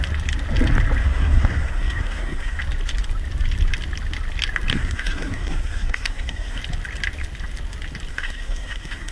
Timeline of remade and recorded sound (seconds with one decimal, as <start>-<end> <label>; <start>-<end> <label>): 0.0-1.0 recorded; 1.0-2.6 remade; 2.6-4.7 recorded; 4.7-6.6 remade; 6.6-8.1 recorded; 8.1-9.1 remade